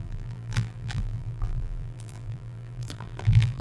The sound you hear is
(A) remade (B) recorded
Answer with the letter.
A